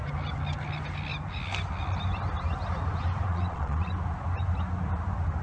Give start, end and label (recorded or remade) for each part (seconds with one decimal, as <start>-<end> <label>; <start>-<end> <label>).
0.0-3.3 recorded; 3.3-3.9 remade; 3.9-5.4 recorded